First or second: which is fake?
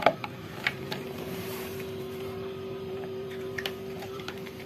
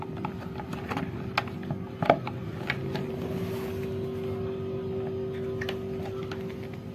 first